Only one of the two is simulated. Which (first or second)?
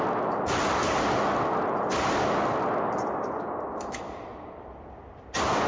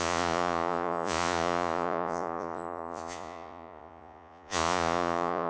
second